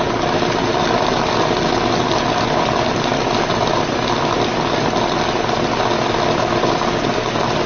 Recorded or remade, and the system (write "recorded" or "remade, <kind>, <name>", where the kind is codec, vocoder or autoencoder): recorded